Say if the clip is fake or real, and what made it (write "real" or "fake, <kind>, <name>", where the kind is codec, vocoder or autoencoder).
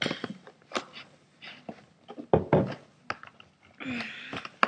real